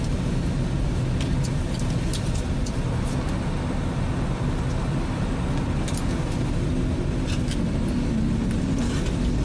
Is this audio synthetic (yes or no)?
no